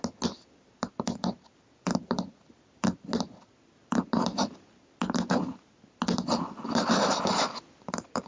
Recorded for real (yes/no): yes